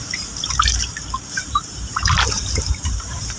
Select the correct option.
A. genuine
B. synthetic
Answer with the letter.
B